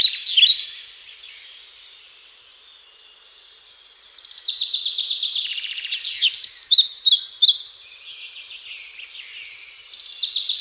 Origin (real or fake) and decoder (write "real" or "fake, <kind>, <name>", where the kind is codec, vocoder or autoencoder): real